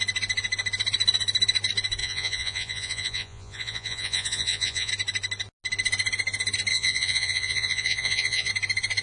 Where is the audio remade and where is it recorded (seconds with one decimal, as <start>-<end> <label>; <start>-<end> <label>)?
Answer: 0.0-2.0 recorded; 2.0-4.9 remade; 4.9-6.7 recorded; 6.7-8.5 remade; 8.5-9.0 recorded